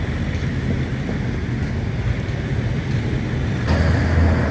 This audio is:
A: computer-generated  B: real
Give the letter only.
B